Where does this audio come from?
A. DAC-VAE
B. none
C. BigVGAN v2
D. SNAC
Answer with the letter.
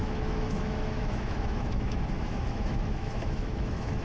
A